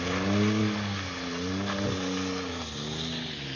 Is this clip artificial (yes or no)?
no